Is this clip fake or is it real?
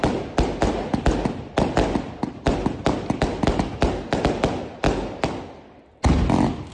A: real